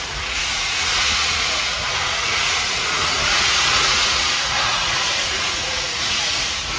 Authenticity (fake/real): fake